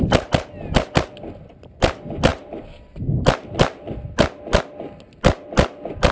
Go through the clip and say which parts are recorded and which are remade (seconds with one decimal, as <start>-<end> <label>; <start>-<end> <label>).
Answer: 0.0-6.1 recorded